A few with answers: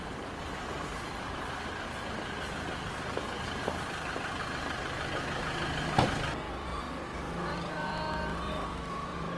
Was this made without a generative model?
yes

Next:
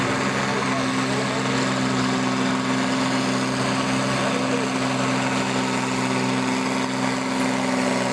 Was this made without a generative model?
yes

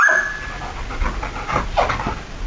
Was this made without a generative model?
yes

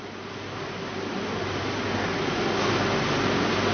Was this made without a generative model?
yes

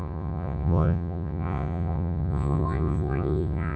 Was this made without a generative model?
no